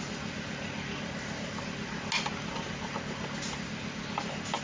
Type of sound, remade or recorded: recorded